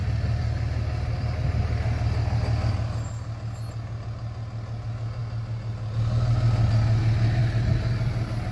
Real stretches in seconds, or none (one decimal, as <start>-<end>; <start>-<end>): 0.0-8.5